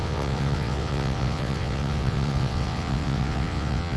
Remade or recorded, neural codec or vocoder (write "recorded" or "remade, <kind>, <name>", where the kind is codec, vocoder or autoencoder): remade, vocoder, WaveNeXt